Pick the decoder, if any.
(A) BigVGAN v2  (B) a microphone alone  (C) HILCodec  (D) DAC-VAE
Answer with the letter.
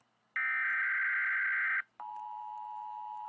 B